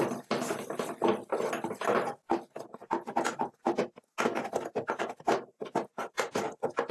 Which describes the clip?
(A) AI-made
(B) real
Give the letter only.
B